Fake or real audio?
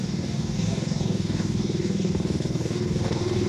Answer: fake